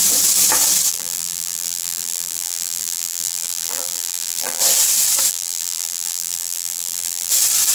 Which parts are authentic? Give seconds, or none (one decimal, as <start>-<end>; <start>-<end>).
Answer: 0.0-0.9; 4.6-5.3; 7.3-7.7